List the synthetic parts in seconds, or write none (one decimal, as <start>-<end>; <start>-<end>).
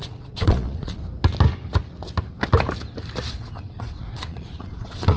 0.0-1.0; 3.3-5.2